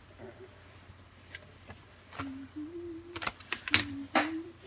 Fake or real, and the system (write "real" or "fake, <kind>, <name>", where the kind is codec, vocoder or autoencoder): real